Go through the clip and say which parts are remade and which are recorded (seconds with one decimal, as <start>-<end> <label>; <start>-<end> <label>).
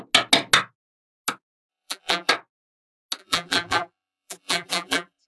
0.0-1.7 recorded; 1.7-2.3 remade; 2.3-3.2 recorded; 3.2-5.3 remade